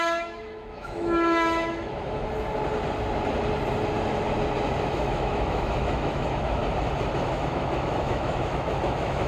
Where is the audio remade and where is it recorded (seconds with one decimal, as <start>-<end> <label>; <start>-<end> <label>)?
0.0-2.2 remade; 2.2-4.8 recorded; 4.8-6.6 remade; 6.6-7.2 recorded; 7.2-9.3 remade